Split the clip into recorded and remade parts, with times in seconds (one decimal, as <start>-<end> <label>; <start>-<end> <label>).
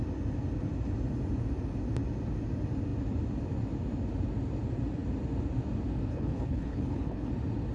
0.0-6.1 recorded; 6.1-7.3 remade; 7.3-7.7 recorded